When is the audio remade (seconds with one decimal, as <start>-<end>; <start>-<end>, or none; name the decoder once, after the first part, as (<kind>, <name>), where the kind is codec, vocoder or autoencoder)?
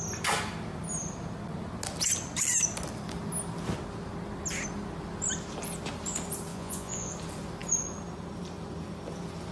6.5-7.1 (vocoder, Vocos)